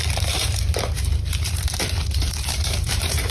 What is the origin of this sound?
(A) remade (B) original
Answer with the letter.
A